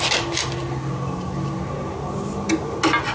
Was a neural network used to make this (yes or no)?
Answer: no